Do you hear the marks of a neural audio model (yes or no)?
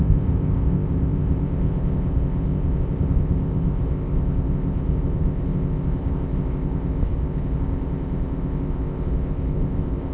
yes